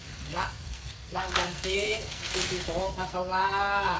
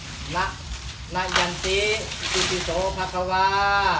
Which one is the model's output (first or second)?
first